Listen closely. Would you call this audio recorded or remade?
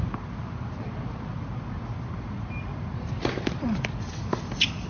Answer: recorded